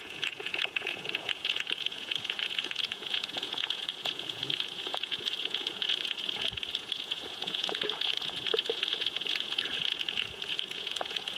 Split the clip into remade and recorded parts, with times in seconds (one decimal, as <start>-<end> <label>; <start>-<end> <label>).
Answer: 0.0-11.4 remade